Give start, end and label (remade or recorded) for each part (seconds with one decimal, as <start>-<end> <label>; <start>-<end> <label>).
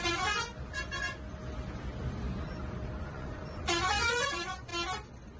0.0-0.5 remade; 0.5-3.0 recorded; 3.0-4.7 remade; 4.7-5.4 recorded